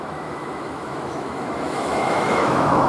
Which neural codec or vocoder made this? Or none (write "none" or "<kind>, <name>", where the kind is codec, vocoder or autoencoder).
autoencoder, DAC-VAE